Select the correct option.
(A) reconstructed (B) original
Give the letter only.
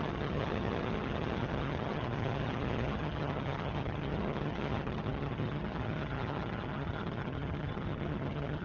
A